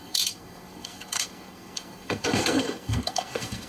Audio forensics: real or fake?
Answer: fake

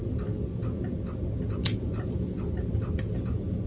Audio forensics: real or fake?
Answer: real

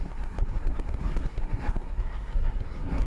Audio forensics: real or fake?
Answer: fake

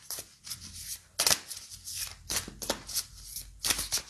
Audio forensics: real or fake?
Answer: real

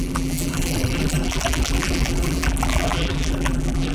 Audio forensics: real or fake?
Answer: fake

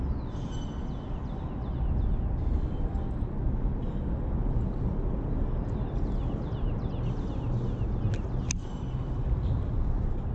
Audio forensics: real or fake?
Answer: real